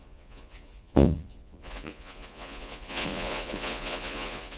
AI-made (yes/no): yes